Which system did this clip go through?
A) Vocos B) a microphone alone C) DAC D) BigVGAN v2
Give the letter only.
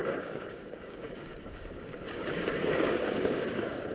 C